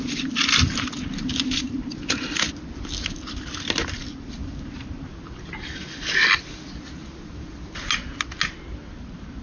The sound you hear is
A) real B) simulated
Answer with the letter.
A